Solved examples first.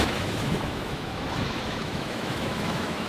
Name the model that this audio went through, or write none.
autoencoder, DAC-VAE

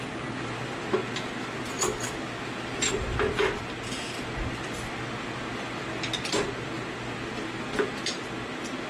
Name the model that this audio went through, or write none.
none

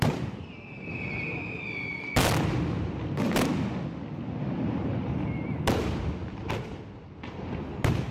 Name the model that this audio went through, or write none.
none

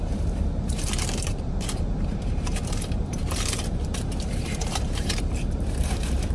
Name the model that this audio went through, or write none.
vocoder, BigVGAN v2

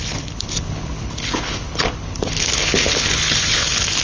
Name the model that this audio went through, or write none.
codec, HILCodec